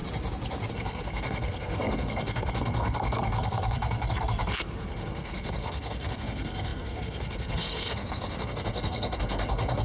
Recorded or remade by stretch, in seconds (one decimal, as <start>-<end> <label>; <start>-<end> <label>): 0.0-0.7 recorded; 0.7-9.8 remade